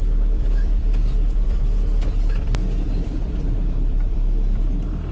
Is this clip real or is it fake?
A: fake